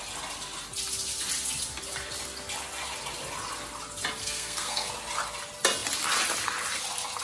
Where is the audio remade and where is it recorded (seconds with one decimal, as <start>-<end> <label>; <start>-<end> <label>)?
0.0-4.2 recorded; 4.2-4.9 remade; 4.9-7.2 recorded